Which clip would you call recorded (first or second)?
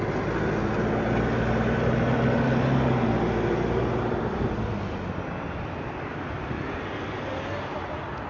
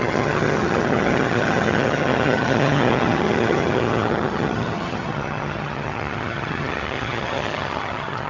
first